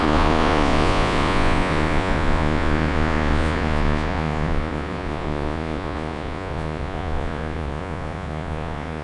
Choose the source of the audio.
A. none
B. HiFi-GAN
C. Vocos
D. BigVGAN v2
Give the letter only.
C